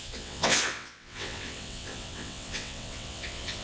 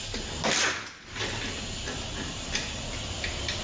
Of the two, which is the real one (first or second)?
second